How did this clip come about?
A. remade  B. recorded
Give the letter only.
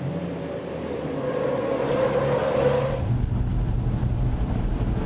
B